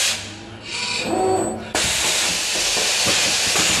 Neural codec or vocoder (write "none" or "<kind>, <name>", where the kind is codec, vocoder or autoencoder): none